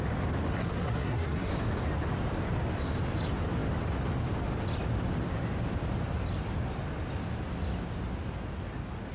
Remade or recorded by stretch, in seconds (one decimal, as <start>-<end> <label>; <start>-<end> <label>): 0.0-0.6 recorded; 0.6-1.5 remade; 1.5-9.1 recorded